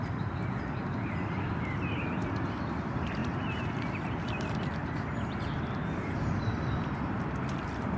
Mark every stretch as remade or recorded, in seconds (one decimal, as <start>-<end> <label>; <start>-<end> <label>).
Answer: 0.0-8.0 recorded